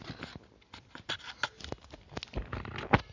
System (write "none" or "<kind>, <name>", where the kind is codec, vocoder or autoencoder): none